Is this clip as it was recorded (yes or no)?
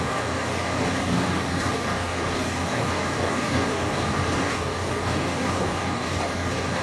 no